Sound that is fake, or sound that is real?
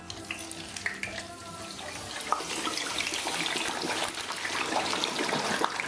real